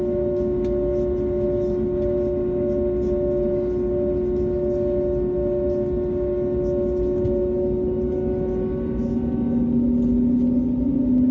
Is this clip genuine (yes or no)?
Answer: yes